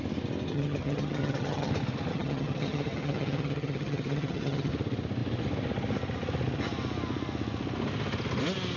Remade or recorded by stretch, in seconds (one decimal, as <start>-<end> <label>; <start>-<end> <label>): 0.0-0.5 recorded; 0.5-1.7 remade; 1.7-2.1 recorded; 2.1-4.7 remade; 4.7-8.8 recorded